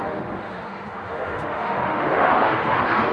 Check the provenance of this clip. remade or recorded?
remade